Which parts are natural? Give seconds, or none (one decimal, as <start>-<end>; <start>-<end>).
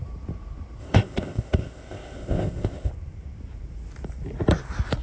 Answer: 0.0-0.8; 2.9-5.0